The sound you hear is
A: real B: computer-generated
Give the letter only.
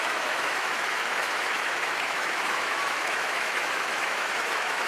B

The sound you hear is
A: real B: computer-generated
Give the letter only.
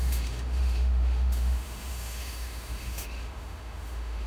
B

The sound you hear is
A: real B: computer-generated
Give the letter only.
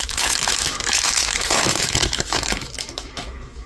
B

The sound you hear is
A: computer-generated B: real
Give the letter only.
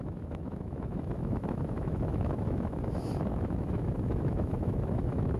A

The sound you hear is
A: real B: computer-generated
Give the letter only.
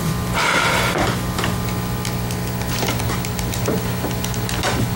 A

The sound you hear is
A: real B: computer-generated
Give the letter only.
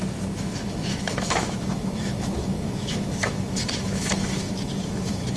B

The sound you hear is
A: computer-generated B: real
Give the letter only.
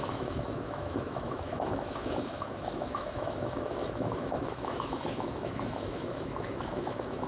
A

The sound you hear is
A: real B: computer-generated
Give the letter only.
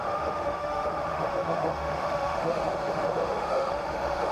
B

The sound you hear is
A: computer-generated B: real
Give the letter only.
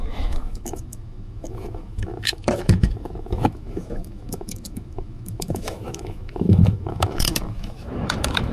A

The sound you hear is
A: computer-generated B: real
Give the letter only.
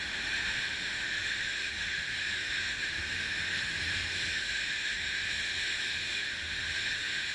A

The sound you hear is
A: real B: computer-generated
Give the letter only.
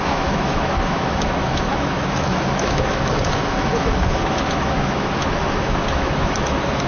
B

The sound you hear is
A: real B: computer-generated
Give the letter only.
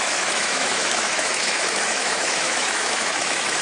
B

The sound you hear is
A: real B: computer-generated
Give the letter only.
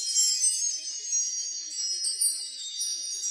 B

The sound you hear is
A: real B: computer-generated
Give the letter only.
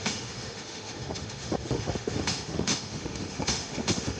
B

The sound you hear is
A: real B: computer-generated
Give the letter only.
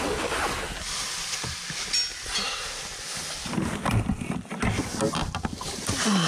A